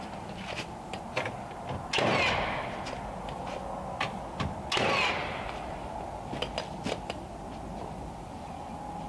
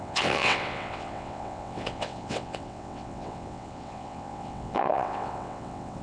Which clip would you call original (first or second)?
first